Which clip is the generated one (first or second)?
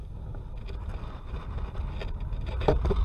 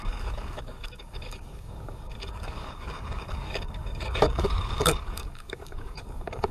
second